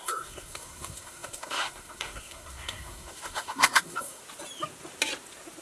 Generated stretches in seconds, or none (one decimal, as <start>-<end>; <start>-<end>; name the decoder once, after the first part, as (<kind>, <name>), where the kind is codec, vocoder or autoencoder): 0.0-4.2 (codec, SNAC)